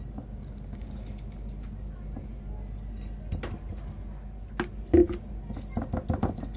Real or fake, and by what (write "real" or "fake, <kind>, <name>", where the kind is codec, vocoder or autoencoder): real